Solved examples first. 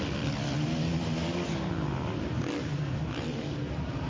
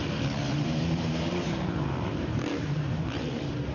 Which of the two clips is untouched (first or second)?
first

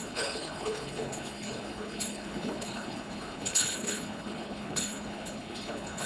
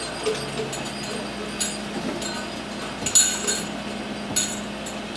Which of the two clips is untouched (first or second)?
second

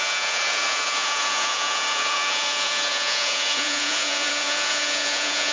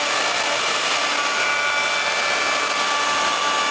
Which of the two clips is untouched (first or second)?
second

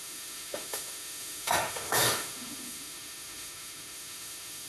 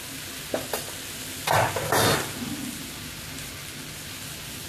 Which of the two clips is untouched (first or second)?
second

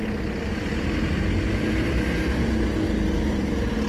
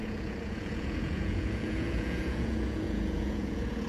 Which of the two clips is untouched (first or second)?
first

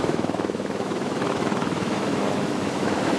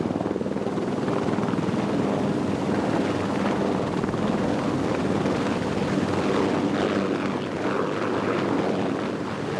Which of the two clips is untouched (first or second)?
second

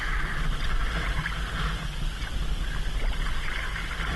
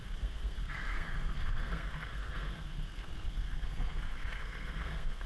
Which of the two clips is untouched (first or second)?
first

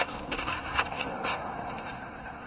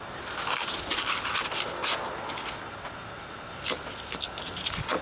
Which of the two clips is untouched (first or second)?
second